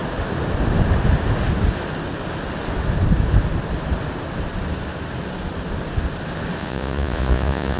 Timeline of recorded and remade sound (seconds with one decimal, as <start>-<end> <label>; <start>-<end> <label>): 0.0-6.6 recorded; 6.6-7.8 remade